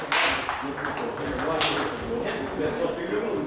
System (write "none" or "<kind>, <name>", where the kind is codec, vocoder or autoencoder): none